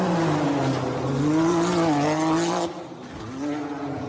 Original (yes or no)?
yes